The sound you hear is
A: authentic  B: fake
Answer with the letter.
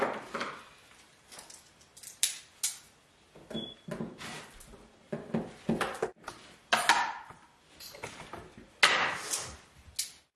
A